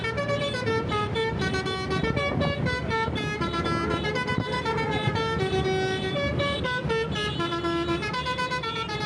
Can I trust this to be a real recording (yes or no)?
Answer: yes